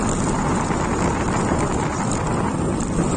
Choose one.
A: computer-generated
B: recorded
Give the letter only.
B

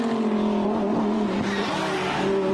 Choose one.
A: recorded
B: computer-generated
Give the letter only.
A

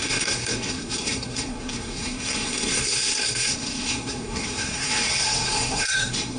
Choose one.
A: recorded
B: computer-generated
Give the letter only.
B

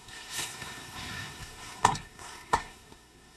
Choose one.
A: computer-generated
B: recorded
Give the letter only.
A